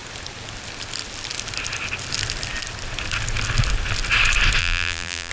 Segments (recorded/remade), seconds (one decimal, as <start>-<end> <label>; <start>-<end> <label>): 0.0-4.6 recorded; 4.6-5.3 remade